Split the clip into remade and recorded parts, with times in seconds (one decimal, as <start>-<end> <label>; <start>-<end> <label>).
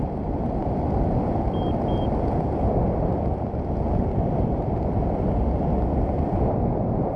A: 0.0-7.2 recorded